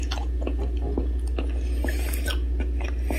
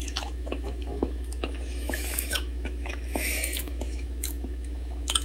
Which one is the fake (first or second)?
second